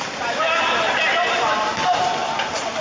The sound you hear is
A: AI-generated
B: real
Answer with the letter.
B